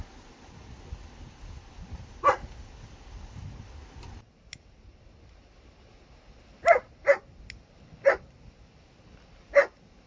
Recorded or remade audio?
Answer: recorded